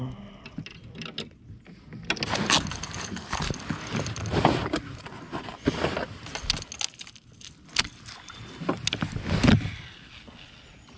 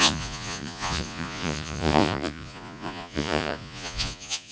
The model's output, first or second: second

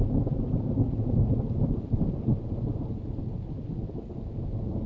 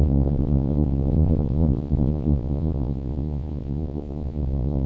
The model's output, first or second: second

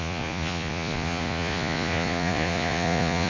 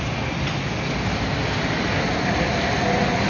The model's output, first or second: first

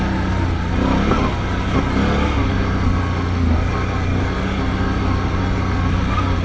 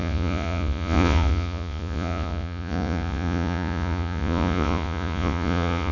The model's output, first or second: second